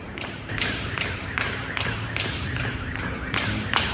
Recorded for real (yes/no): no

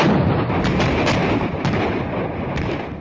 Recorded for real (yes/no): yes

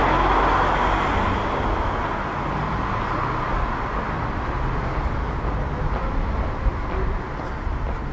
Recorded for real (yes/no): yes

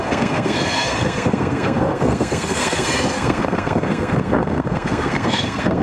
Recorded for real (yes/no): no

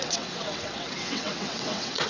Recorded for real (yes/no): no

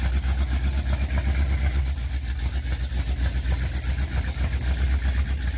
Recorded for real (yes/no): yes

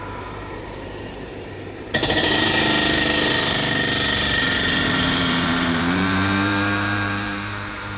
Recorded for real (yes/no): no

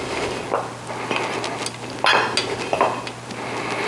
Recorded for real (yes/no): yes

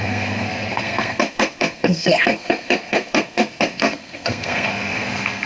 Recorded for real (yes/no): no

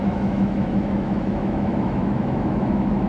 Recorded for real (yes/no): no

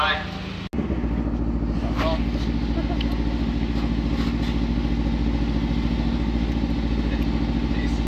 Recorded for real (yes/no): yes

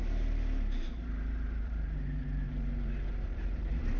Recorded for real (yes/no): no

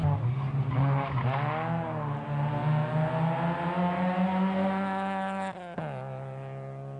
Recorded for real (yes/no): yes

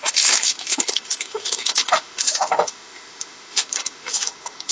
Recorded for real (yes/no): no